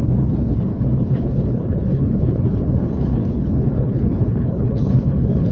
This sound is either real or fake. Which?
fake